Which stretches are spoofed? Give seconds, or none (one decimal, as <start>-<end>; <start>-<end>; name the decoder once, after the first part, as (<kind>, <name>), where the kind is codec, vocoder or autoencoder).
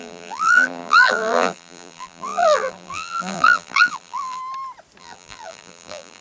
0.0-4.4 (vocoder, BigVGAN v2); 5.0-6.2